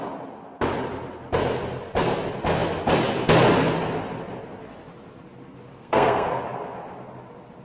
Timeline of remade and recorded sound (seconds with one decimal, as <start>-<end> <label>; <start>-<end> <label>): 0.0-5.7 recorded; 5.7-6.4 remade; 6.4-7.6 recorded